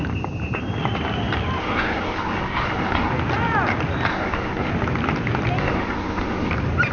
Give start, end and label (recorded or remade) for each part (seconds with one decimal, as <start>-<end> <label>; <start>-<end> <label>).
0.0-1.6 recorded; 1.6-3.1 remade; 3.1-4.1 recorded; 4.1-4.7 remade; 4.7-5.6 recorded; 5.6-6.5 remade; 6.5-6.9 recorded